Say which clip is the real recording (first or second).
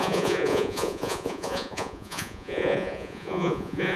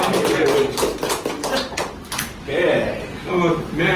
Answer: second